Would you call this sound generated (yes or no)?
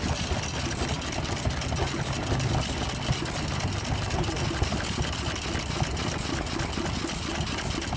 no